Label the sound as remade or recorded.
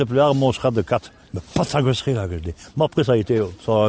recorded